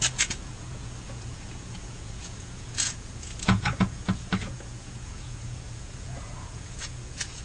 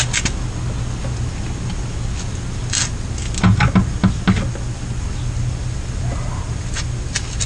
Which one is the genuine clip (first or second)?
second